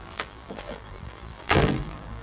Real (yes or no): no